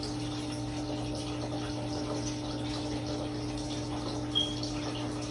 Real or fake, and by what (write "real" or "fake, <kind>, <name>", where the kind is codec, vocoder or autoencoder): real